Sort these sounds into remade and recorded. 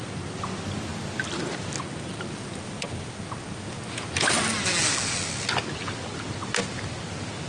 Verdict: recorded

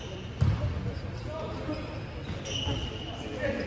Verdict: recorded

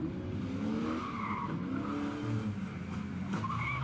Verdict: recorded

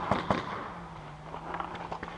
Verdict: recorded